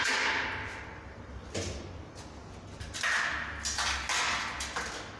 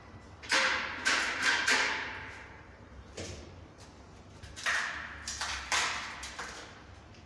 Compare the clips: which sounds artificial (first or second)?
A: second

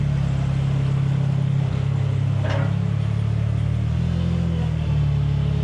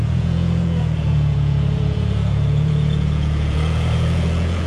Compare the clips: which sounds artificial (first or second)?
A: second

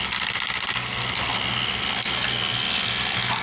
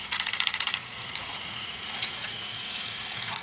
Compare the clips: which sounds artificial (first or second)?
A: second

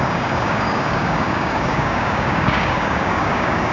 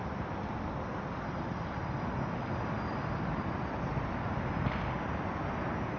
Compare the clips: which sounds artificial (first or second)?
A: first